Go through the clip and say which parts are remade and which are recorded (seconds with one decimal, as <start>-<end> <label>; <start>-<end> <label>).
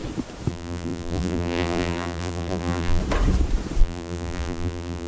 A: 0.0-0.5 recorded; 0.5-3.0 remade; 3.0-3.8 recorded; 3.8-5.1 remade